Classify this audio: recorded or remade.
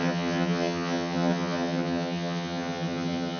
remade